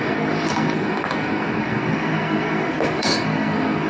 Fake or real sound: fake